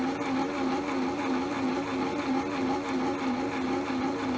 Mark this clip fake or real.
real